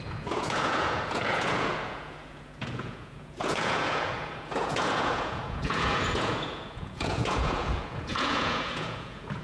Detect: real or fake fake